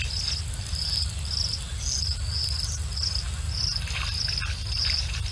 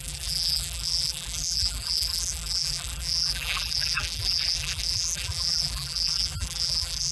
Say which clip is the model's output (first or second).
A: second